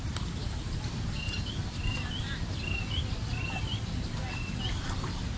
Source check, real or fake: real